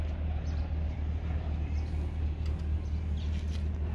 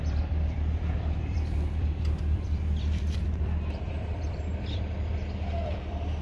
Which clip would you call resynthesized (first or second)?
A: second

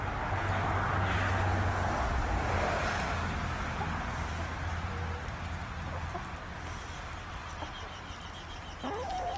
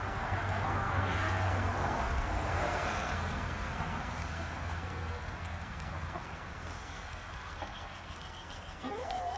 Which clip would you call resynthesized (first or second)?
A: second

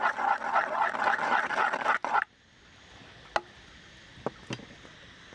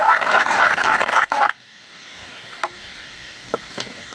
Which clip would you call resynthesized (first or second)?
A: second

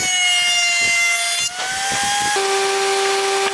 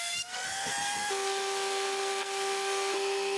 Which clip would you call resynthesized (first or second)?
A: second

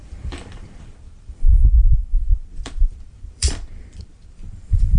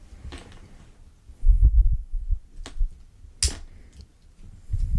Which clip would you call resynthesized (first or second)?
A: first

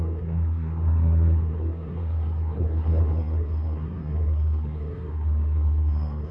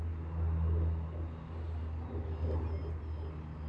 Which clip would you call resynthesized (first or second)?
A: first